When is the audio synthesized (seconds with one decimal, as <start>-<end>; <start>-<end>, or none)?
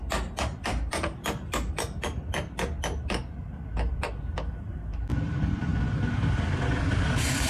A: 0.0-5.7; 7.1-7.5